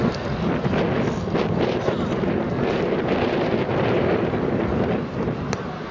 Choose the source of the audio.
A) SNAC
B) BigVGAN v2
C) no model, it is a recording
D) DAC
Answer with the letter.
C